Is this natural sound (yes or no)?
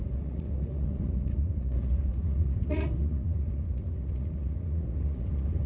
no